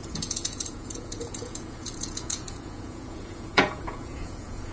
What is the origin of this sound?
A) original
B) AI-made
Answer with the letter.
B